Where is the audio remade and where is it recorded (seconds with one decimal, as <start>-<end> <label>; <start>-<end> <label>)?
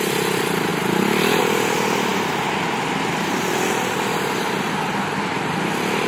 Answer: 0.0-6.1 recorded